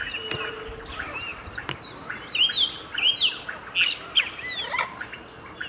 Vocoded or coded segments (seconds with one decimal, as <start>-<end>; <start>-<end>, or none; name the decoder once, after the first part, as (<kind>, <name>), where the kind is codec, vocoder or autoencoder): none